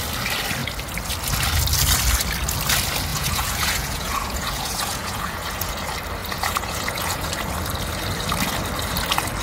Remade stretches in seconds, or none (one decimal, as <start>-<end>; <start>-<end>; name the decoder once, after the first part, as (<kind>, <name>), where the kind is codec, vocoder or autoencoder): 3.1-5.7 (vocoder, Vocos); 6.2-7.3